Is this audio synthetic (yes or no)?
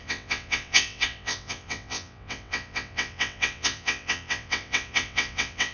yes